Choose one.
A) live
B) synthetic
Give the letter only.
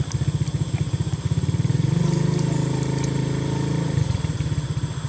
A